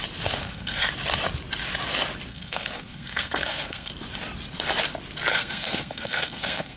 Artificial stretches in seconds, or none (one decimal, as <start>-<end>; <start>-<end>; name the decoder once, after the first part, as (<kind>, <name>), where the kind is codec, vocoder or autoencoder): 0.4-0.9 (codec, SNAC); 2.3-3.9; 5.3-6.8